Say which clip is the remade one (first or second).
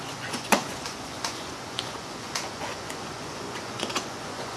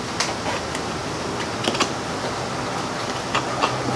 first